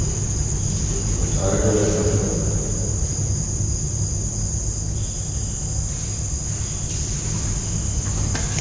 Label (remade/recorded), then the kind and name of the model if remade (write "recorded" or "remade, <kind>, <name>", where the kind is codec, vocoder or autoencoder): recorded